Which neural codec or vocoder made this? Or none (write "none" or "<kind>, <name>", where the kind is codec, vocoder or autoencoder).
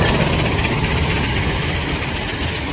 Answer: none